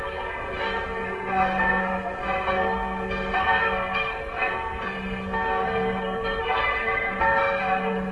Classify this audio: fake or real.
fake